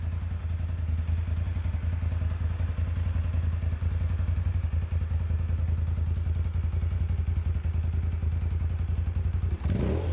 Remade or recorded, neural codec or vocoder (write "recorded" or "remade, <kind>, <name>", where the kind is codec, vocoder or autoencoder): recorded